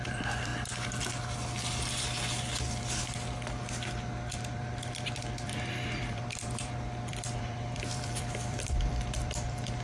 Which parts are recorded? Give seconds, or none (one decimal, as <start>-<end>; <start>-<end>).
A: 0.5-4.4